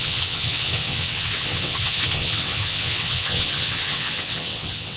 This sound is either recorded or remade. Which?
remade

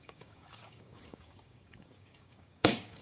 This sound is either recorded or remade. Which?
remade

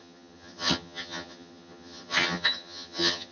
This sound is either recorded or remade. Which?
remade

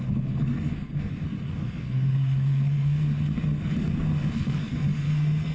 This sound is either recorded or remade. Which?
remade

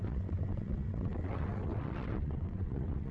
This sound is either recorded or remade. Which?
remade